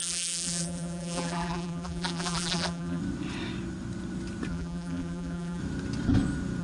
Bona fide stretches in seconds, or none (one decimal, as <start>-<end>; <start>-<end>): 3.0-4.5; 5.6-6.6